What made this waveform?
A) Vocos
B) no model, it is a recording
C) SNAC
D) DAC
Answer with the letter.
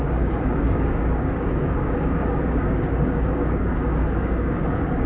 D